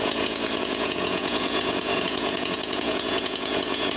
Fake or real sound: fake